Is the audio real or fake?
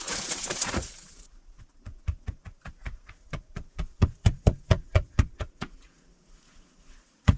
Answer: fake